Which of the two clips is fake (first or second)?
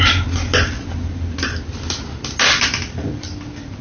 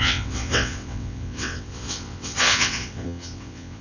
second